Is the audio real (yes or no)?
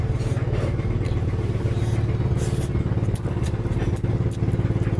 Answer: yes